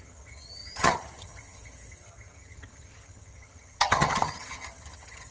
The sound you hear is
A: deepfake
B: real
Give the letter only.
A